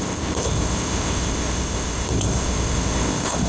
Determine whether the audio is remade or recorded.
remade